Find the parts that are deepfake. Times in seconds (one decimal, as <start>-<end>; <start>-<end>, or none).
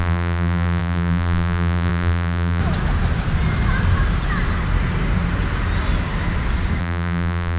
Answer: 0.0-2.6; 6.8-7.6